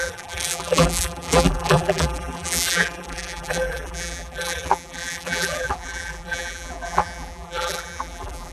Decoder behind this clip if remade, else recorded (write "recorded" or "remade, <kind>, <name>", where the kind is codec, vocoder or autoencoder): remade, vocoder, BigVGAN v2